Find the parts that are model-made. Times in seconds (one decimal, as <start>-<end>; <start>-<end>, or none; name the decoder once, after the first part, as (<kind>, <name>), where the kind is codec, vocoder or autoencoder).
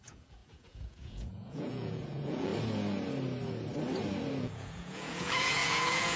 0.0-2.5 (vocoder, Vocos); 4.4-6.2